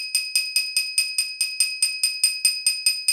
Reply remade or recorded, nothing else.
recorded